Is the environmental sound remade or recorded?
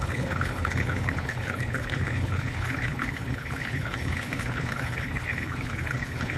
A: remade